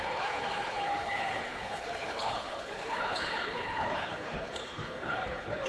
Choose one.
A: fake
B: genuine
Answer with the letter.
A